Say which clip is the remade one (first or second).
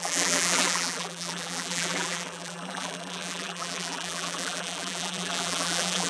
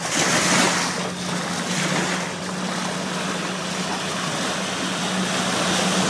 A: first